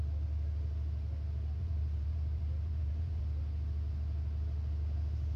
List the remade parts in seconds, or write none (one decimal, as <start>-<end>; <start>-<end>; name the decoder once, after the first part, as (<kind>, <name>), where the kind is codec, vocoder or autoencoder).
1.6-3.2 (vocoder, BigVGAN v2)